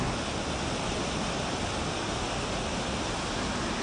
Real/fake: real